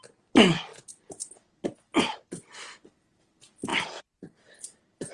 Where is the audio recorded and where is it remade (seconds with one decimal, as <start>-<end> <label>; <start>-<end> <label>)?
0.0-3.7 recorded; 3.7-5.1 remade